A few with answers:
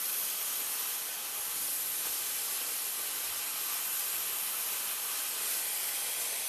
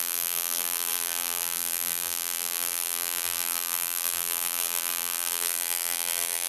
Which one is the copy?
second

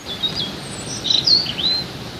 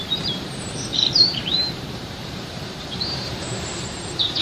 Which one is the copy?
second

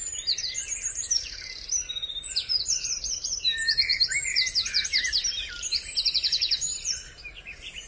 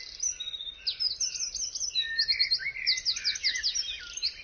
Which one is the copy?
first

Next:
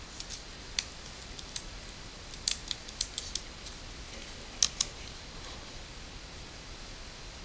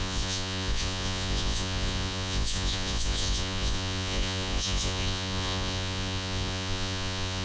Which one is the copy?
second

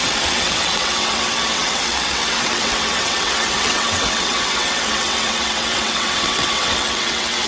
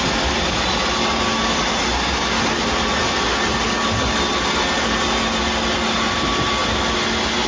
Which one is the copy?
first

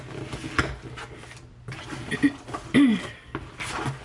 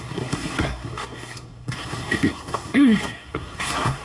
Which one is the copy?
second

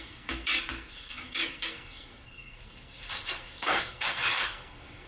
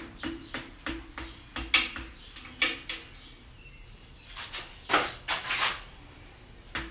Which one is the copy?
first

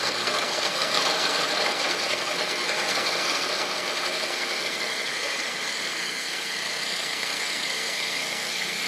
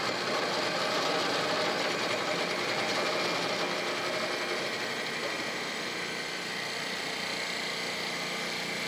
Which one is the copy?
first